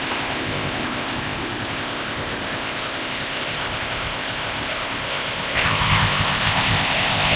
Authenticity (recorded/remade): remade